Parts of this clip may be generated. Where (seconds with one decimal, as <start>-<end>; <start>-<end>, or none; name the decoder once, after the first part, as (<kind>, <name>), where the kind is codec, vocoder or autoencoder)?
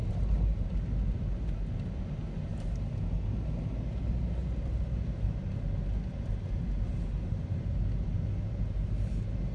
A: none